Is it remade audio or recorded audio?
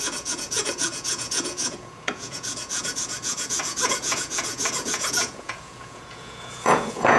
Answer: remade